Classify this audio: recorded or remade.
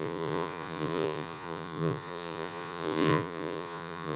remade